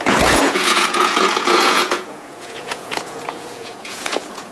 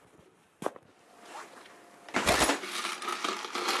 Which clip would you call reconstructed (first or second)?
first